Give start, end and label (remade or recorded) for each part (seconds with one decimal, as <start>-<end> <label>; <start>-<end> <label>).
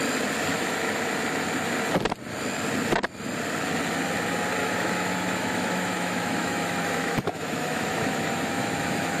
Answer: 0.0-0.5 recorded; 0.5-1.0 remade; 1.0-4.6 recorded; 4.6-9.2 remade